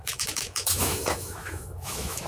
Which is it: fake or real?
fake